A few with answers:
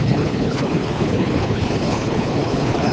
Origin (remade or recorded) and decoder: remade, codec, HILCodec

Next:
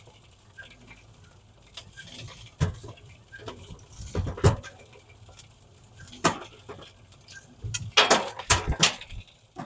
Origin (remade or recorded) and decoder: recorded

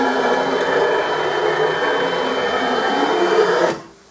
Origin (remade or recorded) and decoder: recorded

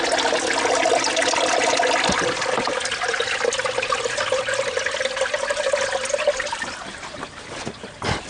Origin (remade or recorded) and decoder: recorded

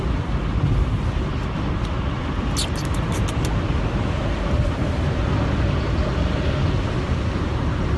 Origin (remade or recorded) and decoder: recorded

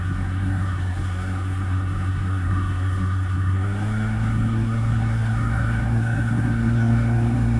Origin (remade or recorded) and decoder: remade, codec, SNAC